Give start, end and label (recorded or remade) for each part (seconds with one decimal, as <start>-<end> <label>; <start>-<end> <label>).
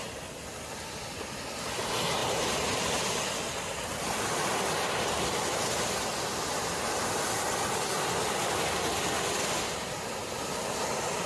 0.0-2.2 recorded; 2.2-2.9 remade; 2.9-11.3 recorded